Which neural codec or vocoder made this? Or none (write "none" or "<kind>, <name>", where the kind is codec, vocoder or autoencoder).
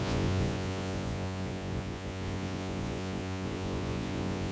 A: vocoder, Vocos